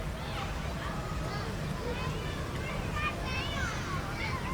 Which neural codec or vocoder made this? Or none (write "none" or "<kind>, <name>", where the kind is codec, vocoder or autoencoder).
none